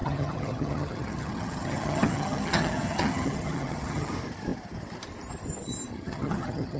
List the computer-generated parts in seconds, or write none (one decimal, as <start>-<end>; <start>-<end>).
0.0-4.1; 5.9-6.8